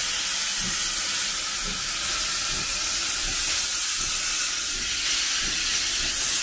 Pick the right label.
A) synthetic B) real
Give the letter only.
B